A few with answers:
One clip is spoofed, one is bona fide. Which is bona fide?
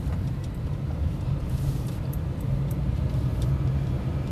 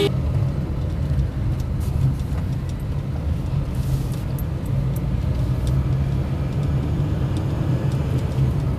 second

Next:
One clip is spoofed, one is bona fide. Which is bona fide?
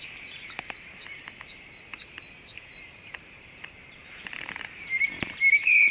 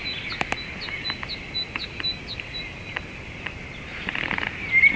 second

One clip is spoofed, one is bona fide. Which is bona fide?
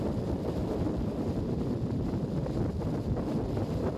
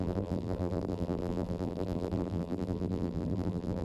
first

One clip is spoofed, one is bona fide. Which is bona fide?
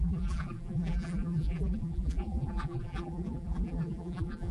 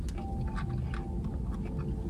second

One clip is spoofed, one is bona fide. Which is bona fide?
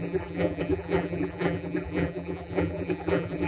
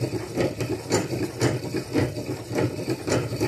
second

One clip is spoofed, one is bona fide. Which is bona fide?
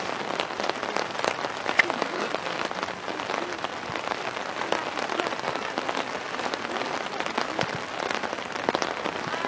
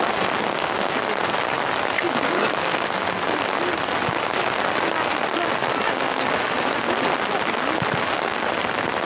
second